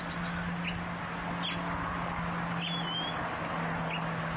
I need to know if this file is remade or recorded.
recorded